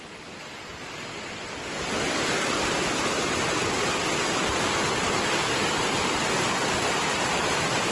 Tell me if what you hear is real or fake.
fake